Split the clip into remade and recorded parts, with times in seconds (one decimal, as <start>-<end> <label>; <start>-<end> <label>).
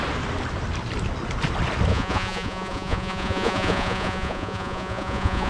0.0-1.9 recorded; 1.9-5.5 remade